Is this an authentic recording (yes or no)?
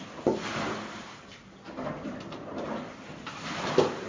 yes